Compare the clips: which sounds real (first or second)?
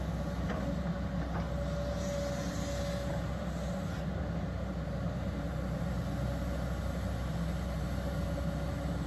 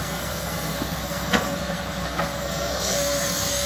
first